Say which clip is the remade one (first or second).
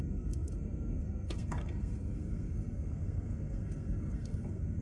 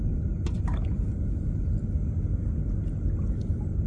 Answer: first